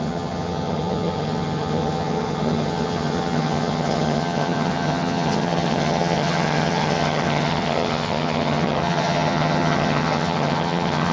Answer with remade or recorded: remade